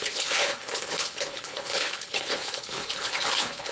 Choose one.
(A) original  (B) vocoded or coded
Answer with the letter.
B